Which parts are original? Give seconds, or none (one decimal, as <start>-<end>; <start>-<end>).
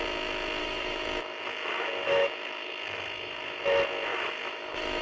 0.0-0.6; 3.6-4.1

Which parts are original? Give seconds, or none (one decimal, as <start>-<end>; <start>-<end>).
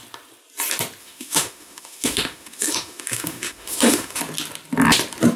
0.0-1.0; 4.2-5.4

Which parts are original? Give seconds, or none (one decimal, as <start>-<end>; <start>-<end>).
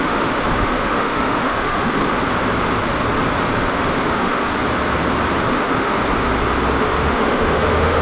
2.2-3.7; 4.5-5.5; 6.0-6.8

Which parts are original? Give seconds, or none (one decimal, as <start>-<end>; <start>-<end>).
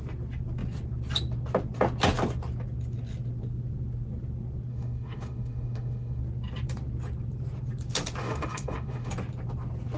0.0-4.7; 6.2-8.2; 9.1-10.0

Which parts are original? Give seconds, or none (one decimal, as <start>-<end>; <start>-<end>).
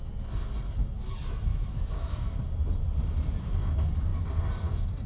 0.0-1.5; 2.4-5.1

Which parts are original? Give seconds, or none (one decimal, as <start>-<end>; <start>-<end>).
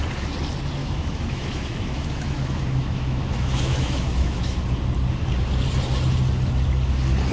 0.0-0.8; 4.6-7.3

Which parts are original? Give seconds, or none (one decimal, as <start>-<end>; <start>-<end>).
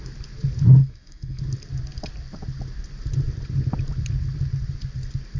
0.0-0.8; 1.4-5.4